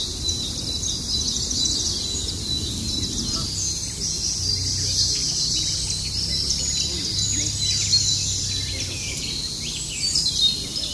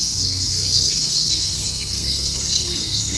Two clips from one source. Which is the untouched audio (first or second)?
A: first